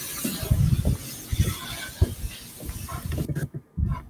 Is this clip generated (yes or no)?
no